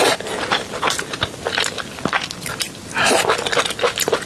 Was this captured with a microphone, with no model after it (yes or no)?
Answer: yes